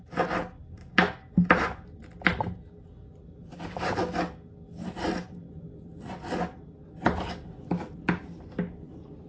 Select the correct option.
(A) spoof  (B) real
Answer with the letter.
B